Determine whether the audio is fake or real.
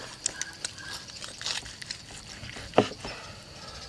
real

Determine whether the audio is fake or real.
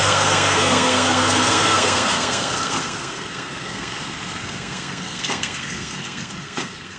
fake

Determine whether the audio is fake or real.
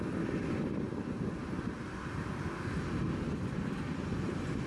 real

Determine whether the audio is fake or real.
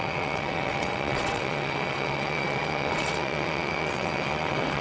fake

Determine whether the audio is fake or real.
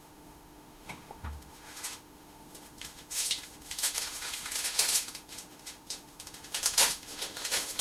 fake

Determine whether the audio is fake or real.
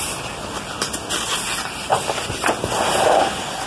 real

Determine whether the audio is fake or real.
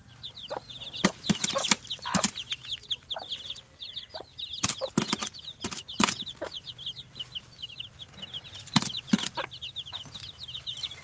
real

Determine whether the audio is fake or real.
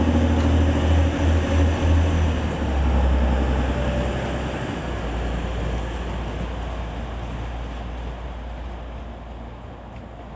real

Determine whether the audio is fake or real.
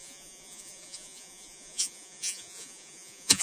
fake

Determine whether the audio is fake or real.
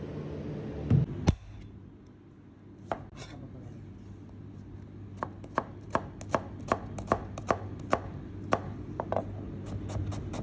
real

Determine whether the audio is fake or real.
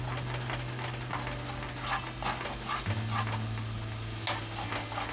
real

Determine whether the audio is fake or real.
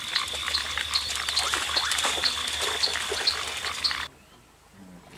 real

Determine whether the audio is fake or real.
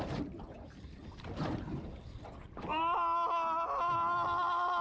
real